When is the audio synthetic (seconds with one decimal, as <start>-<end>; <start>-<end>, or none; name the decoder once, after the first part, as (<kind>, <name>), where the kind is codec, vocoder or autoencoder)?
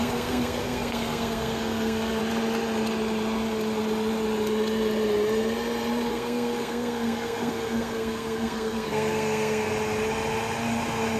0.0-2.2 (codec, SNAC); 6.1-9.7